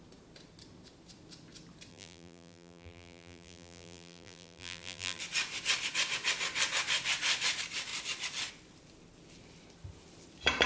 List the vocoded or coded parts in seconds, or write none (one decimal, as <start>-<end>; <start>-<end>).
1.9-5.2